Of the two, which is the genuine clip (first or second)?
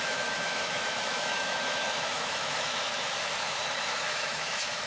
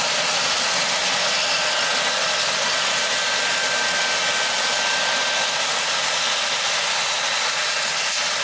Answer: second